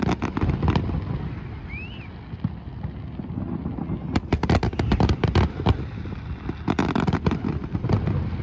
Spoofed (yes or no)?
no